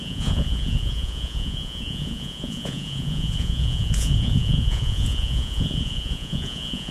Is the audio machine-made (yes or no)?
yes